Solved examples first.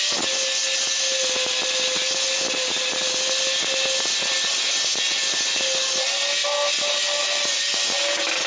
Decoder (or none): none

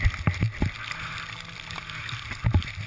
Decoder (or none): none